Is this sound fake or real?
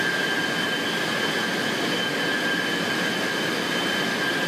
real